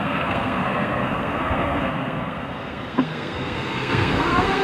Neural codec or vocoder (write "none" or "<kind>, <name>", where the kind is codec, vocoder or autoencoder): codec, SNAC